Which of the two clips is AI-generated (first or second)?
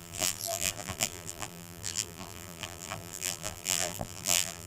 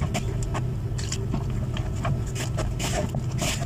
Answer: first